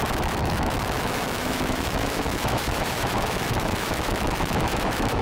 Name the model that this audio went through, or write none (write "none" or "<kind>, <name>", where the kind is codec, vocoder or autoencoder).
autoencoder, DAC-VAE